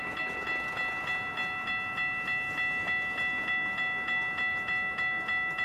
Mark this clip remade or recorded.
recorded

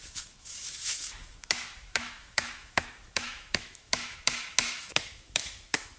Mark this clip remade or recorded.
remade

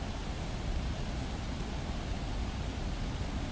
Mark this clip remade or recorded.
recorded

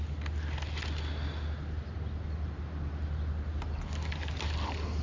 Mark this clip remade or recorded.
recorded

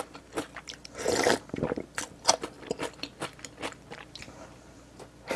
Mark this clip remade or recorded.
remade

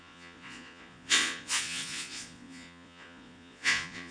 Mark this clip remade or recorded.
remade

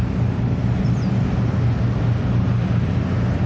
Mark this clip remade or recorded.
recorded